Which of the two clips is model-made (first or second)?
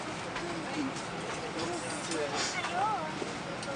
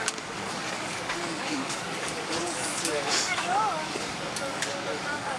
second